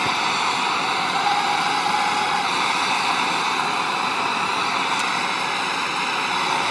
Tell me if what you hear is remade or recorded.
recorded